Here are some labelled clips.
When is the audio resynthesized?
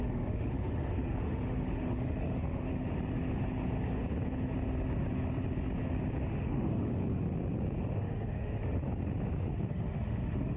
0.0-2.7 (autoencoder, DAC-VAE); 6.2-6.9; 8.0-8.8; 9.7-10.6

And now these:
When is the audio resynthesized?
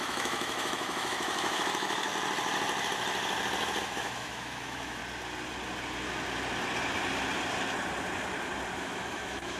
0.0-2.1 (autoencoder, DAC-VAE); 3.8-5.0; 8.8-9.6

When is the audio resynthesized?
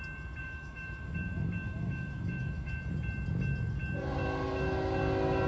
0.4-2.8 (autoencoder, DAC-VAE)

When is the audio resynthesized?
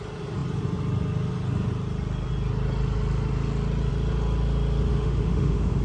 4.9-5.8 (autoencoder, DAC-VAE)